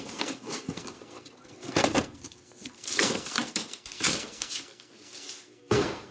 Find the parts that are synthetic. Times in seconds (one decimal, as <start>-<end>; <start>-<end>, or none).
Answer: 0.0-6.1